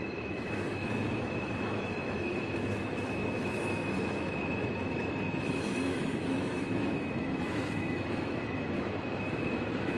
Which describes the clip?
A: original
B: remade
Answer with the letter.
B